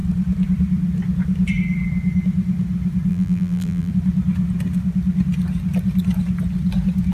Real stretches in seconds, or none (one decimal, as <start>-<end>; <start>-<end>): 0.0-3.1; 3.9-7.1